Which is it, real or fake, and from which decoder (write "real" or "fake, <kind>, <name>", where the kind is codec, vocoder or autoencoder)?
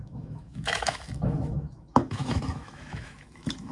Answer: fake, autoencoder, DAC-VAE